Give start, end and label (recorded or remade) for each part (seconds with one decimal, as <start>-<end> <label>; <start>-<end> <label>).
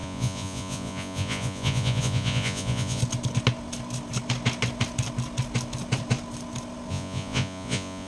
0.0-3.0 remade; 3.0-6.9 recorded; 6.9-8.1 remade